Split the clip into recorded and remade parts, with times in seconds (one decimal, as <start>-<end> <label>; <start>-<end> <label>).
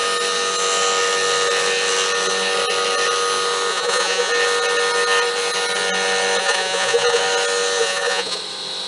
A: 0.0-3.7 recorded; 3.7-4.3 remade; 4.3-6.4 recorded; 6.4-7.2 remade; 7.2-7.8 recorded; 7.8-8.4 remade; 8.4-8.9 recorded